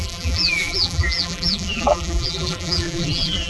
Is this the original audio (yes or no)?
no